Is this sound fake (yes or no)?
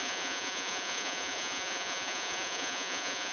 yes